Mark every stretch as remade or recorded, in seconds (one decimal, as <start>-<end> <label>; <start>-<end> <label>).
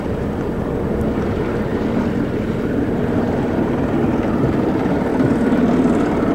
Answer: 0.0-6.3 recorded